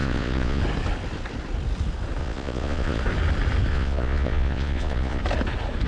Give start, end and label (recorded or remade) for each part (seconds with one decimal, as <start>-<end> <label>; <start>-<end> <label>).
0.0-0.6 remade; 0.6-2.2 recorded; 2.2-3.0 remade; 3.0-3.7 recorded; 3.7-5.2 remade; 5.2-5.9 recorded